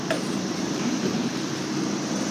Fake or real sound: fake